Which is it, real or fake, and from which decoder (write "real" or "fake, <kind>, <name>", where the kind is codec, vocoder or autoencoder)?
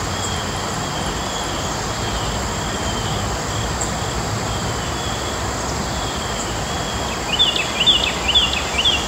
real